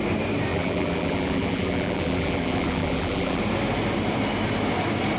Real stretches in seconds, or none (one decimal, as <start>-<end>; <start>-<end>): 0.0-0.5; 3.4-5.2